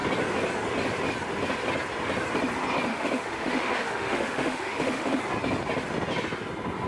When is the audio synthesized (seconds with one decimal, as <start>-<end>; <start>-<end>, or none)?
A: 2.9-5.2